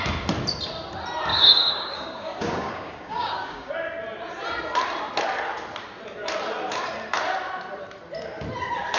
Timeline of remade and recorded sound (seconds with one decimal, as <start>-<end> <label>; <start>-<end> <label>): 0.0-1.3 recorded; 1.3-3.7 remade; 3.7-9.0 recorded